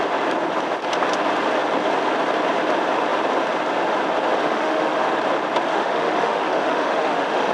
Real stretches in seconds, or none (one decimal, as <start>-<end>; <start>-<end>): 0.0-4.4; 5.0-5.7